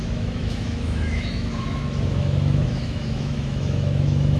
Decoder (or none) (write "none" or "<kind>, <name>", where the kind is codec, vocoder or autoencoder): autoencoder, DAC-VAE